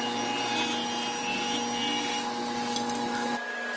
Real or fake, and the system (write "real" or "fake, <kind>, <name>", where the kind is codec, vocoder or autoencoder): real